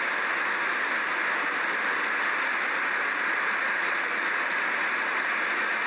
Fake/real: real